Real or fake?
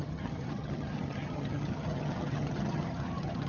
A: fake